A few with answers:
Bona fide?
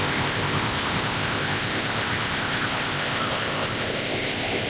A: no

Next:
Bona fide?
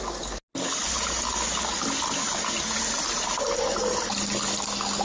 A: yes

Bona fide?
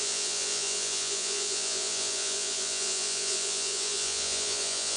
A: no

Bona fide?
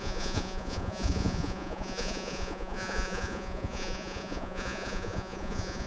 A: no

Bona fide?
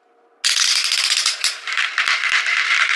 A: yes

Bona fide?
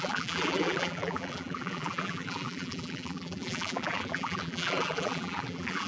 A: no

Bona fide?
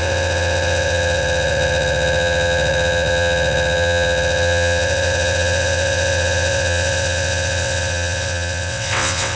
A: no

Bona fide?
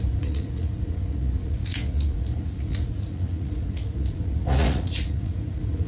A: no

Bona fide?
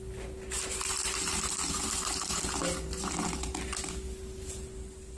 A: yes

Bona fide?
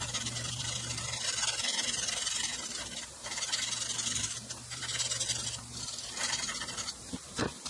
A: no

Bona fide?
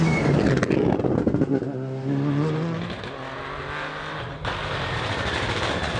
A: yes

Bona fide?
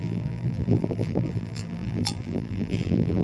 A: no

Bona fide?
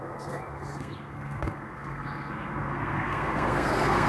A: no